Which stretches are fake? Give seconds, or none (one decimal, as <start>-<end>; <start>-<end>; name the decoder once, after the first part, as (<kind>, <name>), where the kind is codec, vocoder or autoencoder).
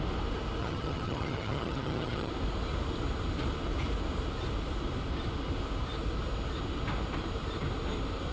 0.6-2.3 (vocoder, HiFi-GAN)